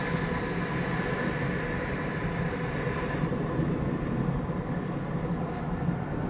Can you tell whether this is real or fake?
real